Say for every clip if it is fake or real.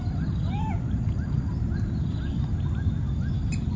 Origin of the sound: real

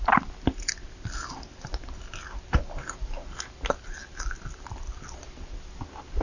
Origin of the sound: real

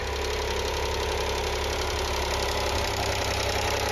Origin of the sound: real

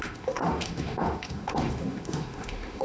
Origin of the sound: fake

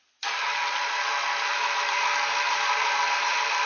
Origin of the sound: fake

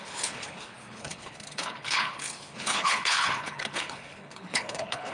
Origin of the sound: fake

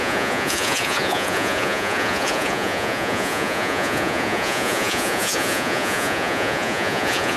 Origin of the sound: fake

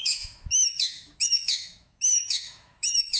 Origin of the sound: fake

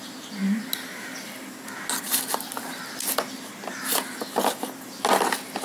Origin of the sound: real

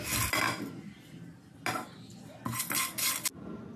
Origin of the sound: real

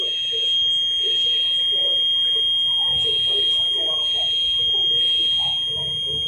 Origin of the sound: real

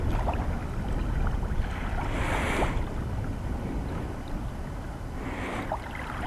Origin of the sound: real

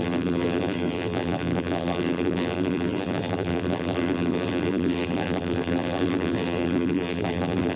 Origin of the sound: fake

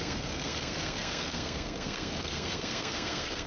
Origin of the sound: fake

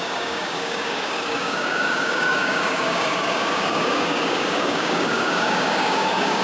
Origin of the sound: fake